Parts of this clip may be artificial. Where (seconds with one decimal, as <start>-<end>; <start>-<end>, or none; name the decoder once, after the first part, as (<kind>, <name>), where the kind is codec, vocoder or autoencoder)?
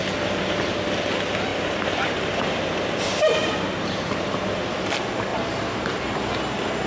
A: 1.5-2.7 (vocoder, BigVGAN v2); 3.4-4.7; 5.3-6.2